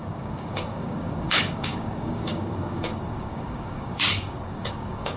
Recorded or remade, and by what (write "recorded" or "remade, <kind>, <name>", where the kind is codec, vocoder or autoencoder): remade, codec, DAC